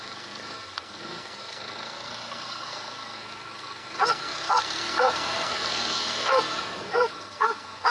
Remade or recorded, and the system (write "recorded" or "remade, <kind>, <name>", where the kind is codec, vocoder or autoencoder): remade, codec, SNAC